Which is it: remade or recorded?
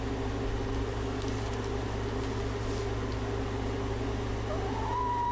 recorded